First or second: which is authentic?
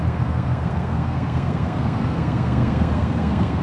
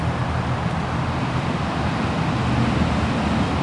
second